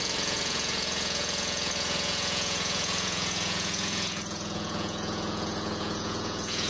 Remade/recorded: remade